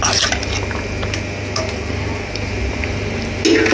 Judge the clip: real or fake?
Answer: real